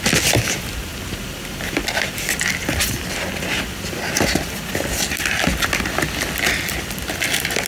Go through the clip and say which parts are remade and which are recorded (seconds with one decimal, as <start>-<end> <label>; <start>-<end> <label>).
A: 0.0-7.7 recorded